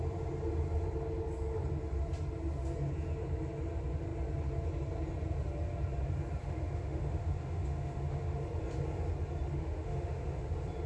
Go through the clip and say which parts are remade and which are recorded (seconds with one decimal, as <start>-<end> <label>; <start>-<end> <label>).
0.0-6.4 recorded; 6.4-8.4 remade; 8.4-9.5 recorded; 9.5-10.5 remade; 10.5-10.9 recorded